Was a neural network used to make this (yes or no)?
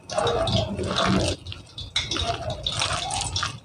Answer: no